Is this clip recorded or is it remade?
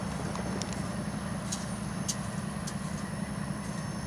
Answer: recorded